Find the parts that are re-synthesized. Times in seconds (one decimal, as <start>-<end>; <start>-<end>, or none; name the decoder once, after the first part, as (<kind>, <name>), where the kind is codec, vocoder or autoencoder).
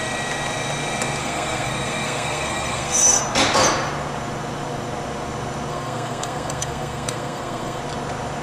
1.2-3.2 (codec, SNAC); 5.7-7.8